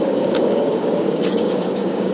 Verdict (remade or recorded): remade